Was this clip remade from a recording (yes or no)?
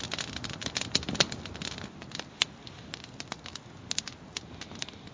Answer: no